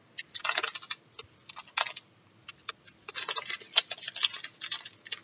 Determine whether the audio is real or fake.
real